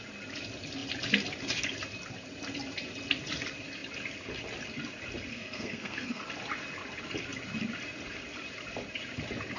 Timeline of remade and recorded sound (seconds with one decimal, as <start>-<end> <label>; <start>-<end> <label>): 0.0-5.3 recorded; 5.3-6.2 remade; 6.2-9.6 recorded